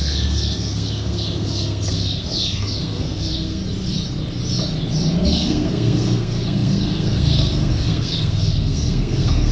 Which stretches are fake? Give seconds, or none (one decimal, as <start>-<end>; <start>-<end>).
0.0-3.6; 5.2-9.5